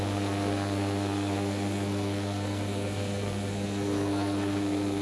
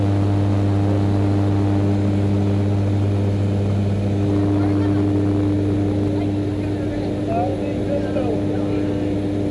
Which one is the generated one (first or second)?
first